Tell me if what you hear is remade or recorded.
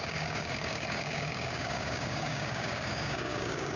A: remade